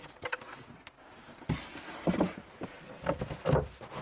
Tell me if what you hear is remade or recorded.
recorded